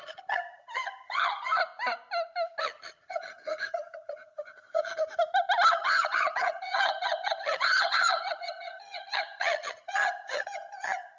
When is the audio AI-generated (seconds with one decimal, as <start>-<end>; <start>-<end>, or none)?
0.0-1.6; 2.6-5.0; 5.7-11.2